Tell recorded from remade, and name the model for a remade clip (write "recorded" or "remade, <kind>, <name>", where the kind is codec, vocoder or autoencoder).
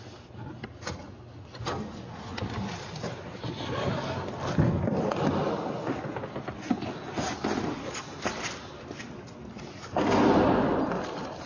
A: recorded